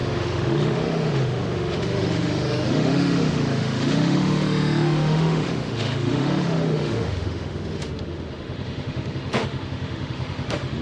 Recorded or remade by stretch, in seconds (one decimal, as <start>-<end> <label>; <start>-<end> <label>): 0.0-10.8 remade

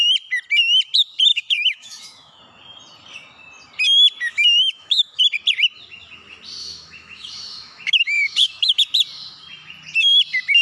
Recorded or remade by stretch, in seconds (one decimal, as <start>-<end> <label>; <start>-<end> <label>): 0.0-1.3 recorded; 1.3-2.4 remade; 2.4-4.3 recorded; 4.3-5.2 remade; 5.2-6.6 recorded; 6.6-8.8 remade; 8.8-10.6 recorded

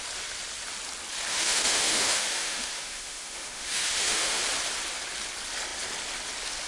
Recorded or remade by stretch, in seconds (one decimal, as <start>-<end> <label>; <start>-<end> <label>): 0.0-1.3 recorded; 1.3-4.4 remade; 4.4-6.7 recorded

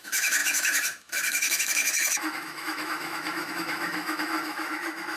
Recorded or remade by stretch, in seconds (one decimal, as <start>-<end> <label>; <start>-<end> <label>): 0.0-5.2 remade